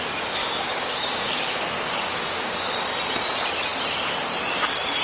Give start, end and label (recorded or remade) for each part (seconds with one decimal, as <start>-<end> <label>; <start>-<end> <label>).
0.0-0.4 recorded; 0.4-2.7 remade; 2.7-5.0 recorded